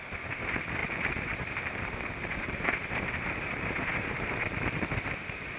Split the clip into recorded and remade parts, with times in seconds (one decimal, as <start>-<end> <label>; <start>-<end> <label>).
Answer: 0.0-5.6 remade